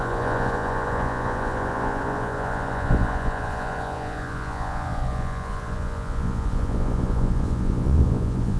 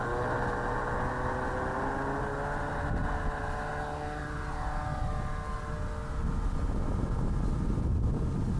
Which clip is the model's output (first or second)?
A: first